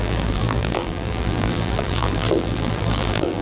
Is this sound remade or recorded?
remade